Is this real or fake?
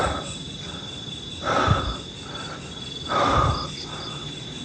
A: real